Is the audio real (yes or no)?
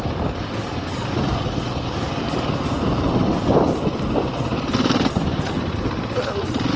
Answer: yes